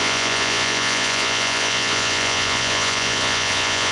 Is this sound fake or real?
fake